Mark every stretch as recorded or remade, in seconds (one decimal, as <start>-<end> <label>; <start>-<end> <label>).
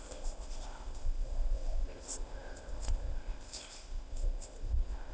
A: 0.0-5.1 remade